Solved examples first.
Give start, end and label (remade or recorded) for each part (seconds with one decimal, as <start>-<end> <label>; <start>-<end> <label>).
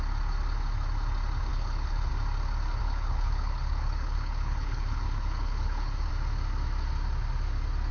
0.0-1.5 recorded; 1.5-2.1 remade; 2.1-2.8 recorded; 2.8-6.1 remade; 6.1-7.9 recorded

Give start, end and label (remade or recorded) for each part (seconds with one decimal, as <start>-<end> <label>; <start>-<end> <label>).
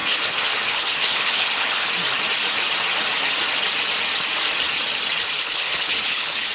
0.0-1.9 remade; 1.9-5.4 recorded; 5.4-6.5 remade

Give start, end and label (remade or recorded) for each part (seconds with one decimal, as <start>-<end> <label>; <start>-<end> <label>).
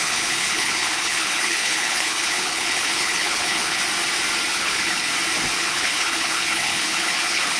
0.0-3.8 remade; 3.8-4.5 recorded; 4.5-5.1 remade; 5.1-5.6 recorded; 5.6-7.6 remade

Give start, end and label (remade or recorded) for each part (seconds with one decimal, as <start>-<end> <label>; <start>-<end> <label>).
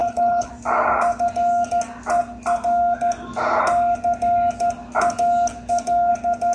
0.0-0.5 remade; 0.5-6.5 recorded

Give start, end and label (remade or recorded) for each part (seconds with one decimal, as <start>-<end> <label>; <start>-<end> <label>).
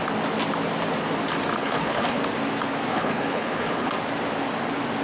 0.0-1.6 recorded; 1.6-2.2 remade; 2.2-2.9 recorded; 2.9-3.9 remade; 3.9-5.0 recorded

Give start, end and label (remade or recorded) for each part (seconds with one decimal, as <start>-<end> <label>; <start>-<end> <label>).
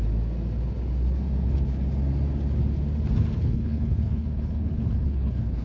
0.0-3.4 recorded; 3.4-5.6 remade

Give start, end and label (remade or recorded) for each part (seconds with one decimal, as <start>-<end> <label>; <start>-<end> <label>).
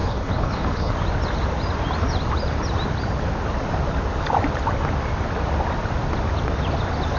0.0-0.9 remade; 0.9-7.2 recorded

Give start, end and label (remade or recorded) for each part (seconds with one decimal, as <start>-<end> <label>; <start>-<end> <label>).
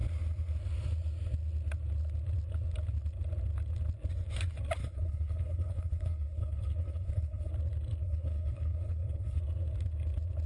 0.0-4.8 recorded; 4.8-7.5 remade; 7.5-8.0 recorded; 8.0-9.4 remade; 9.4-10.5 recorded